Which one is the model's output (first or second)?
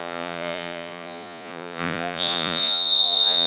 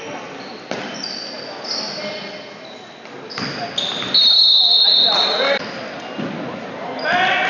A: first